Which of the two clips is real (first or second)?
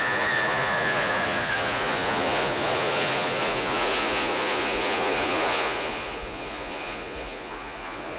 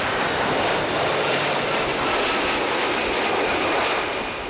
second